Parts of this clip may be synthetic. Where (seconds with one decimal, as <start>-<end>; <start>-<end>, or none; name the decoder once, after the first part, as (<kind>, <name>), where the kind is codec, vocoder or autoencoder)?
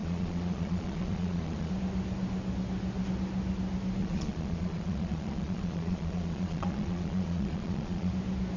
0.0-1.7 (vocoder, Vocos); 4.0-8.1